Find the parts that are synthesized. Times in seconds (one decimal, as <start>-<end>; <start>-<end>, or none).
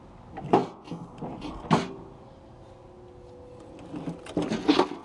none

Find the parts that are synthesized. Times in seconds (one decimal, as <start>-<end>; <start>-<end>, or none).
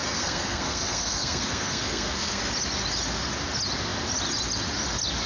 0.0-2.4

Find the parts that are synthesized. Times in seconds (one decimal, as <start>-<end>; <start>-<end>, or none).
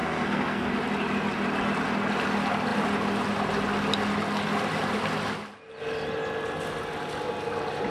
0.0-0.7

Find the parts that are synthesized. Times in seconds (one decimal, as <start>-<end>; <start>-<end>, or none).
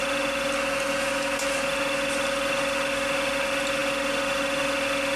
none